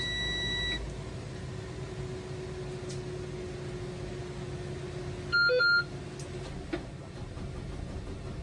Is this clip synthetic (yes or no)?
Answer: no